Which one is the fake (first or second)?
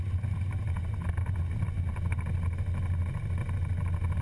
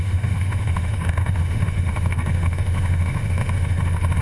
second